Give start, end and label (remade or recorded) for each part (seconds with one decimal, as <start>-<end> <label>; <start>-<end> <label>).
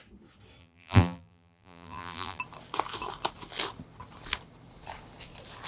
0.0-0.6 recorded; 0.6-2.4 remade; 2.4-5.7 recorded